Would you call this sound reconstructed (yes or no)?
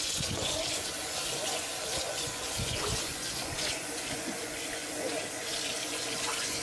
yes